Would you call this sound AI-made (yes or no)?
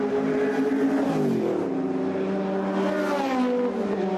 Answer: no